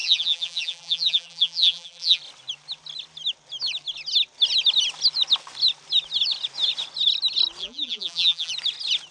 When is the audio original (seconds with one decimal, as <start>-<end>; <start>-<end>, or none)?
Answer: 2.2-7.6; 8.5-9.1